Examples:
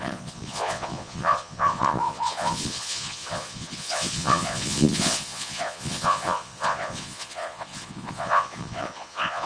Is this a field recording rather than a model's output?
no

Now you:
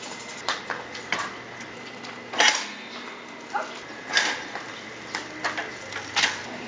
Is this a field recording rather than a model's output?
yes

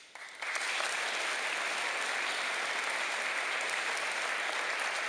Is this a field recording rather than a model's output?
yes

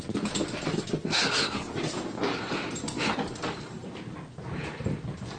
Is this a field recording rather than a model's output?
yes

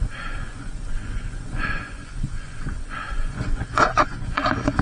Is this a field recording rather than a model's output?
no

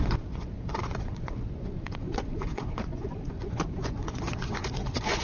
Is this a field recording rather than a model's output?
no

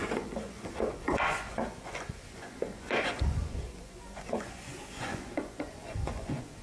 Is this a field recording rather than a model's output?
no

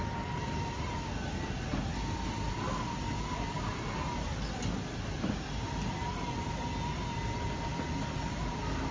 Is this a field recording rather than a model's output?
yes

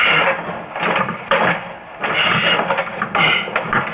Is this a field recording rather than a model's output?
yes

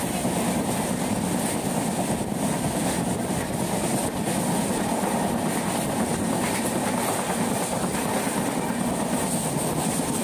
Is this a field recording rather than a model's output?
yes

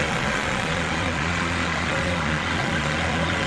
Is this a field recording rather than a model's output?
no